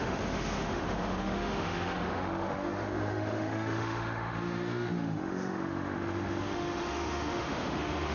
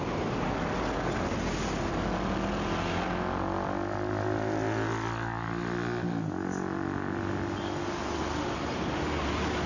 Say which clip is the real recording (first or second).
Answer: second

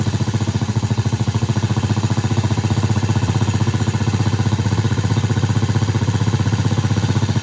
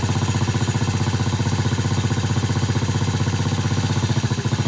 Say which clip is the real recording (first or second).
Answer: second